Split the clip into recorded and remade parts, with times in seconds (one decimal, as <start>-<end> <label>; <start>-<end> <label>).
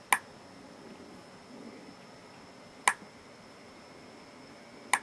0.0-5.0 recorded